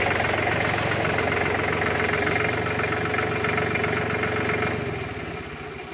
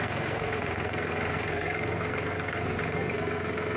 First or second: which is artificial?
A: second